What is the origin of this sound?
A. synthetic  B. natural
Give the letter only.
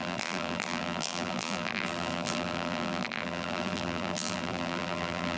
A